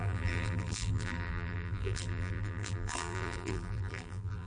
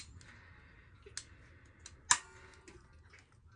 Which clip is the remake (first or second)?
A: first